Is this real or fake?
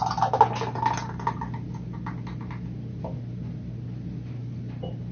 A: real